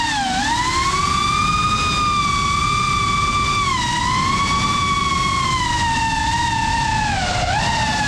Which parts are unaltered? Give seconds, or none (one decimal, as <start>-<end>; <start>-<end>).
0.0-8.1